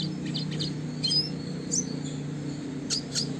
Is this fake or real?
real